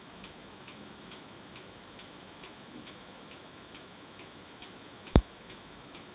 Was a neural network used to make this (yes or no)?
yes